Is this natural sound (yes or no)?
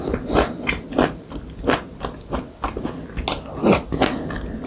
yes